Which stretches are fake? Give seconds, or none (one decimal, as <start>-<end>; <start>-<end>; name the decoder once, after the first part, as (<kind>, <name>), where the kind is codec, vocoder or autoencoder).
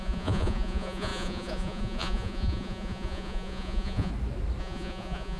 0.0-4.1 (vocoder, Vocos); 4.6-5.4